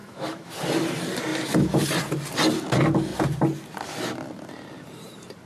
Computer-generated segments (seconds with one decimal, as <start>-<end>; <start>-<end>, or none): 0.0-0.5